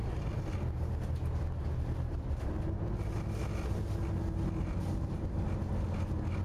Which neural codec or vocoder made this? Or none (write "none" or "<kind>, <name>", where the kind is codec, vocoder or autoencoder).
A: none